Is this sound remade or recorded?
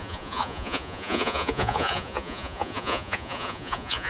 remade